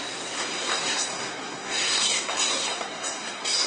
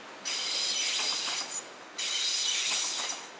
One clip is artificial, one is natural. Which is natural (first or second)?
second